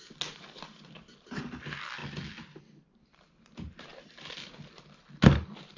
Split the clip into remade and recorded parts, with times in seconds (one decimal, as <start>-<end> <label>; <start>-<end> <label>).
0.0-5.8 recorded